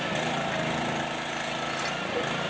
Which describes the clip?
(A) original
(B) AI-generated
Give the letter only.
A